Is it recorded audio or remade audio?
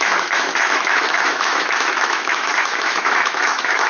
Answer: remade